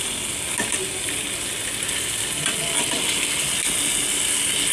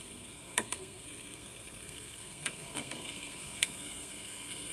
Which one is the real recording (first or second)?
first